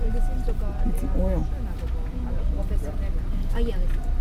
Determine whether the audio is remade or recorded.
recorded